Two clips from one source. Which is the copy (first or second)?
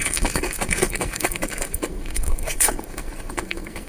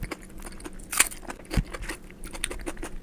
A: first